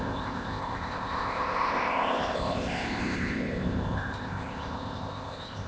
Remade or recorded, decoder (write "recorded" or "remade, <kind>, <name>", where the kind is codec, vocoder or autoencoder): remade, codec, ZipCodec